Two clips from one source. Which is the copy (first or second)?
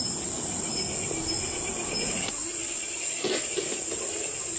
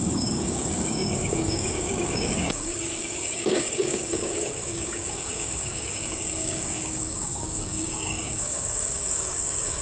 second